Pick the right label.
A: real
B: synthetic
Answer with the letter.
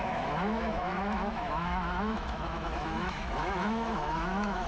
B